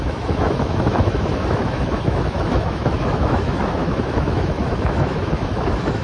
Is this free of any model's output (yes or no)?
no